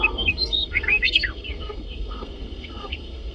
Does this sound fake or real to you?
fake